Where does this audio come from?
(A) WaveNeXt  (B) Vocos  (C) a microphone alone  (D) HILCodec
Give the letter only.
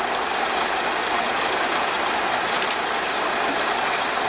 C